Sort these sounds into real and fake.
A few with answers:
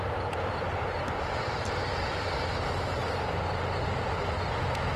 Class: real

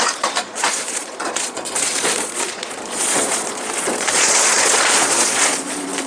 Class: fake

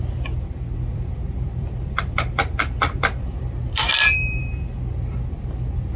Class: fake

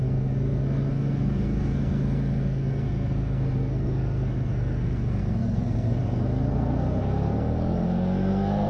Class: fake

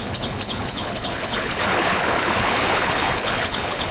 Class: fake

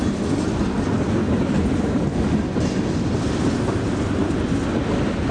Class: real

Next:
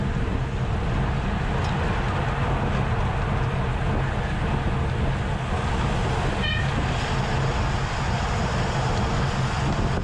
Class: real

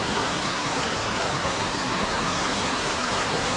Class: fake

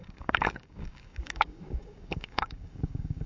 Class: fake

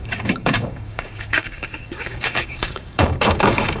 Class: fake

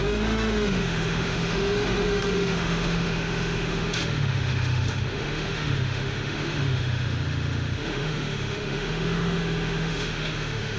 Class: fake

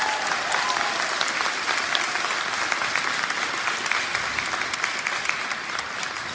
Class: real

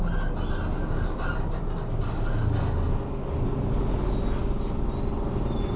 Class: real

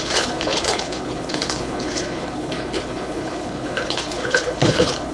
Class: fake